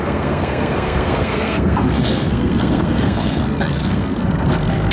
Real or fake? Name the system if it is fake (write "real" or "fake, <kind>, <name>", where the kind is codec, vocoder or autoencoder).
fake, codec, SNAC